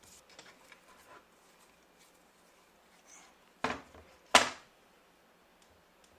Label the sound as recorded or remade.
recorded